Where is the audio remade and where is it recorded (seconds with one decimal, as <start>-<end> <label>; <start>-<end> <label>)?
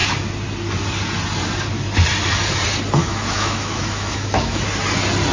0.0-3.0 recorded; 3.0-4.6 remade; 4.6-5.3 recorded